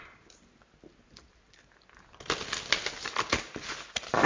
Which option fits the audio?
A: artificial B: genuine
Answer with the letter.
B